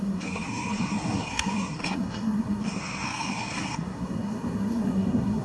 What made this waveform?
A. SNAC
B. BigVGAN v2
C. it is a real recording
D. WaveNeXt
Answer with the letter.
A